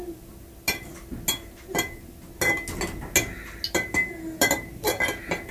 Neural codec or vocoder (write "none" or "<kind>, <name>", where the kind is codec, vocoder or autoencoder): none